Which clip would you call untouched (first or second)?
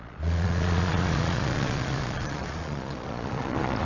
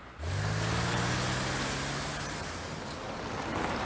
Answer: second